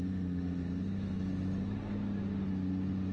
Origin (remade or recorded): recorded